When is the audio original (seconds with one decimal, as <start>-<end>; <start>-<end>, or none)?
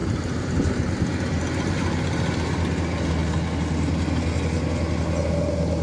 1.0-5.8